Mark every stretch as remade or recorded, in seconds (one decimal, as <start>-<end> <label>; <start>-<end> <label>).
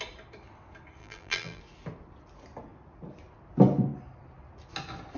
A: 0.0-1.0 recorded; 1.0-1.6 remade; 1.6-5.2 recorded